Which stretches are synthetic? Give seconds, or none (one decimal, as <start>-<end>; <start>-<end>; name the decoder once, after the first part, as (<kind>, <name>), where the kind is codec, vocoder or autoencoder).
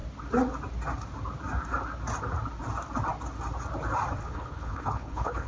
4.2-5.5 (codec, HILCodec)